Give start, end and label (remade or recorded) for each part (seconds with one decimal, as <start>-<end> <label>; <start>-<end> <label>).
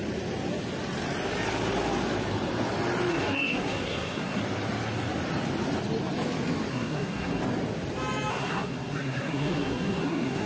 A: 0.0-3.1 recorded; 3.1-4.4 remade; 4.4-6.7 recorded; 6.7-7.4 remade; 7.4-8.3 recorded; 8.3-10.5 remade